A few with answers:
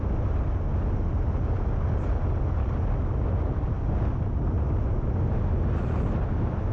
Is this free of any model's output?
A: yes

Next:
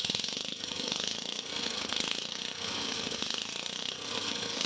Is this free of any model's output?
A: no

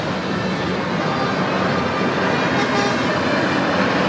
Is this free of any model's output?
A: yes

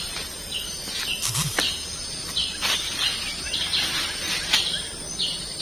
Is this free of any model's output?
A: yes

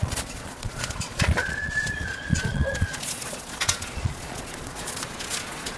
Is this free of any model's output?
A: no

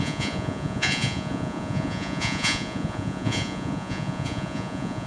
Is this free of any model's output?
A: no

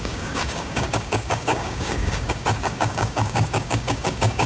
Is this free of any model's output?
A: no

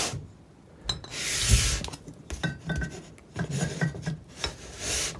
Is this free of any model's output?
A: yes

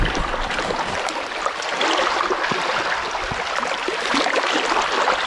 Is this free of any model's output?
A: yes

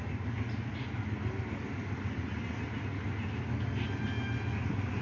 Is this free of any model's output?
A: yes